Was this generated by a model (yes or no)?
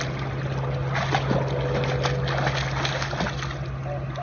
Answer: no